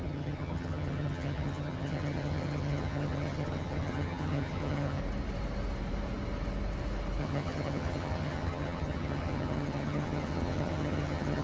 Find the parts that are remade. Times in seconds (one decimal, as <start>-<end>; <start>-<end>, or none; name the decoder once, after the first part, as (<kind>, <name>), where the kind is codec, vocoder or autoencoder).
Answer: 0.0-5.0 (vocoder, HiFi-GAN); 7.2-11.4